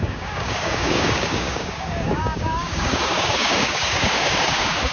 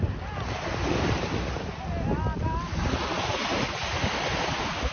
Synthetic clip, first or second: first